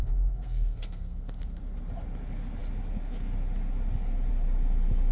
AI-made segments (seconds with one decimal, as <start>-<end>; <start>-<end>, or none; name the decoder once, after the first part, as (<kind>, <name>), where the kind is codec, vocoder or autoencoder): 0.0-1.6 (codec, SNAC)